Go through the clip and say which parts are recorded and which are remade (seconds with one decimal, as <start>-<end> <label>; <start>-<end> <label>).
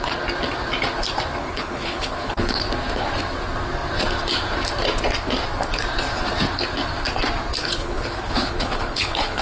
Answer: 0.0-1.4 recorded; 1.4-2.7 remade; 2.7-7.6 recorded; 7.6-9.4 remade